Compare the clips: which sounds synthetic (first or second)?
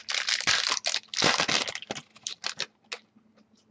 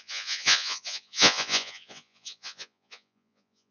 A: second